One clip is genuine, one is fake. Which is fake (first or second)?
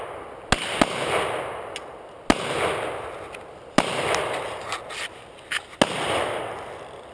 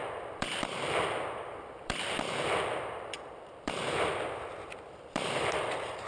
second